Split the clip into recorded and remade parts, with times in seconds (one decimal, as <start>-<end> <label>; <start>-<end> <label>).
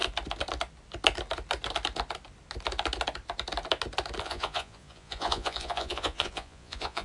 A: 0.0-4.2 recorded; 4.2-7.0 remade